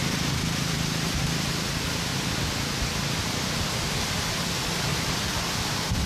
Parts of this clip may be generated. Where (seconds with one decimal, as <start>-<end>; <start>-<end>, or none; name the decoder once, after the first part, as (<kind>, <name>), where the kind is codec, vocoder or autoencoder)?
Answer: 2.1-4.5 (vocoder, BigVGAN v2); 4.9-6.1